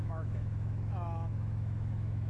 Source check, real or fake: fake